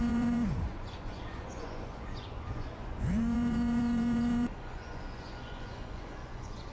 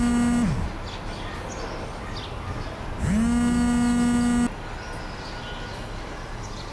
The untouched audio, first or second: second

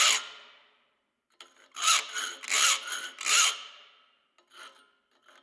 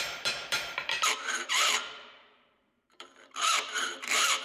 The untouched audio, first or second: first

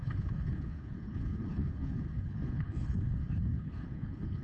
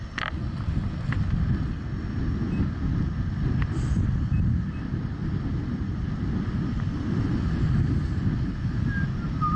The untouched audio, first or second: second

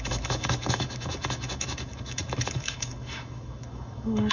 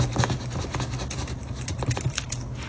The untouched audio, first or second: second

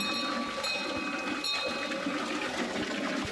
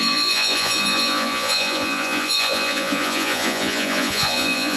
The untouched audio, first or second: first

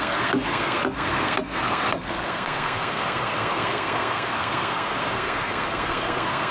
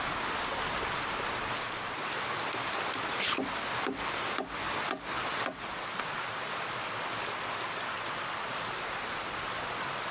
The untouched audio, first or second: second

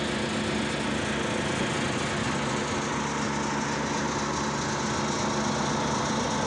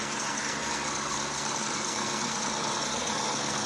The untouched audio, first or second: first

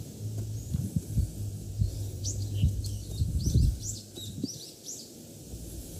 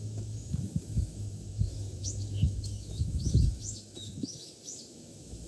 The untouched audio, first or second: first